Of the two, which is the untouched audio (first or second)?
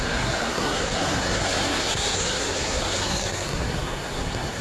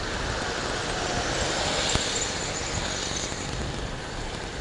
second